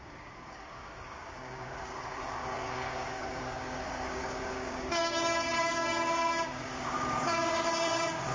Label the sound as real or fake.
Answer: fake